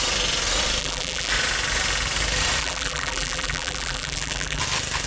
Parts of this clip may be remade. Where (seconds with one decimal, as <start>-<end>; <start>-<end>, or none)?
0.8-1.3; 2.6-4.6